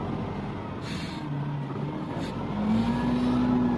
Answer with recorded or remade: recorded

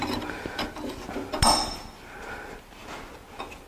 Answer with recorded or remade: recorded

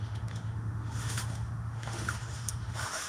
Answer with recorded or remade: remade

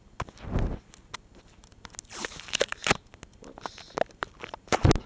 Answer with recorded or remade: recorded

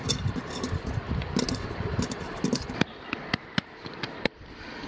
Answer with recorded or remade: recorded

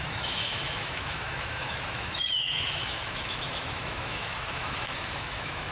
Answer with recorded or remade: remade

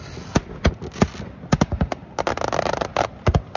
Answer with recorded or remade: recorded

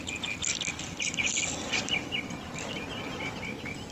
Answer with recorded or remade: recorded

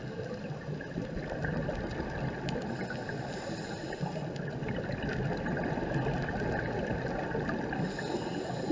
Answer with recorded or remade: recorded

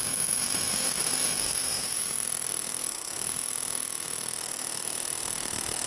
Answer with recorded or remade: remade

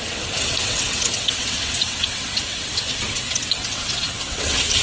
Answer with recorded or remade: remade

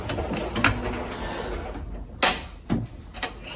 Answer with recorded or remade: recorded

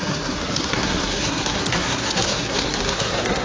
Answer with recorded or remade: remade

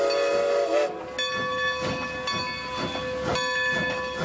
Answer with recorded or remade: recorded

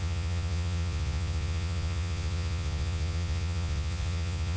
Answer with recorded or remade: remade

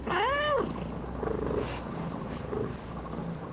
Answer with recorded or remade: recorded